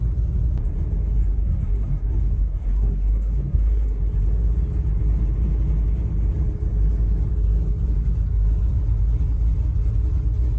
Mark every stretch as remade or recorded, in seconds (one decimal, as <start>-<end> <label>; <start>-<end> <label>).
0.0-1.2 recorded; 1.2-4.0 remade; 4.0-10.6 recorded